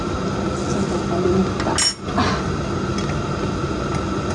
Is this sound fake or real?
real